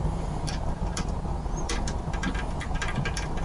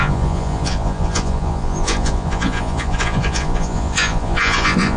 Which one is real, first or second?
first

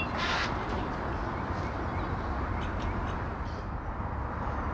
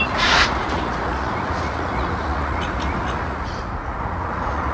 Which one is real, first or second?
first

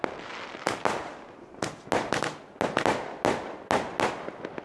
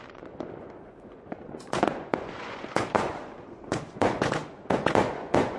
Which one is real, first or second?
first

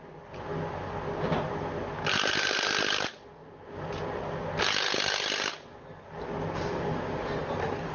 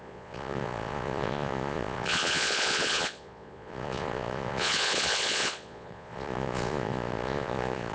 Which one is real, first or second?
first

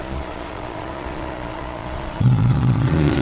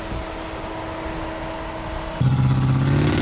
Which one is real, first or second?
second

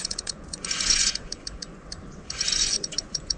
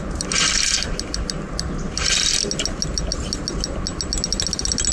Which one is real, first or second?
second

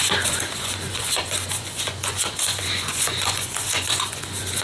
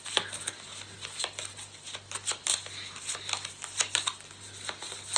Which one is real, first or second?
second